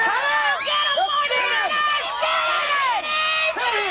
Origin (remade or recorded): recorded